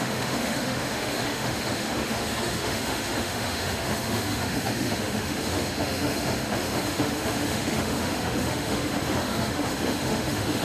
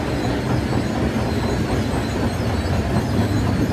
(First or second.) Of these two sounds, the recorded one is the second